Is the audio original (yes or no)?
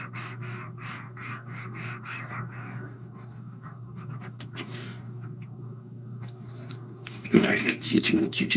no